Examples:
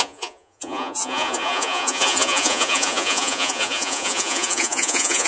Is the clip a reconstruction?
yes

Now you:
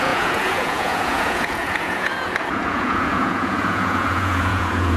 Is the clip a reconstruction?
yes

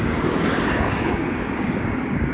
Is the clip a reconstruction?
yes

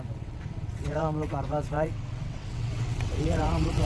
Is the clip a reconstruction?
yes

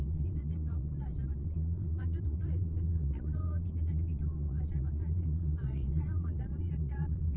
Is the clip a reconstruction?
yes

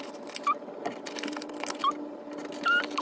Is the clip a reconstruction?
no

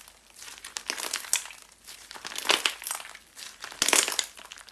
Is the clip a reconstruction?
no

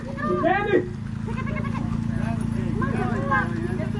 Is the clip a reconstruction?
no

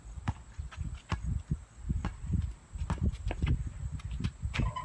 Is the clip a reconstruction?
no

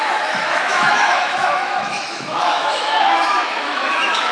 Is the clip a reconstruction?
yes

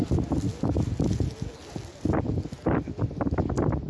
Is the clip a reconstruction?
no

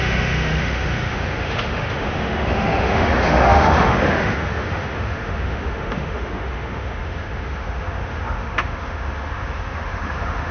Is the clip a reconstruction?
yes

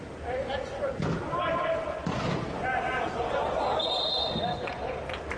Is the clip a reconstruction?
no